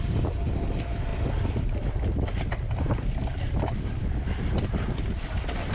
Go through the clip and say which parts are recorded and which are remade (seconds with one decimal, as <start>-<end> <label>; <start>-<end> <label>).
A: 0.0-5.7 recorded